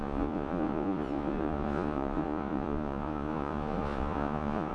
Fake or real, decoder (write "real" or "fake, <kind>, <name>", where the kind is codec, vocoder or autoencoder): fake, vocoder, Vocos